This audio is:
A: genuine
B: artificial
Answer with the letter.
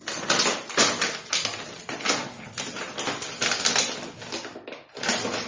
A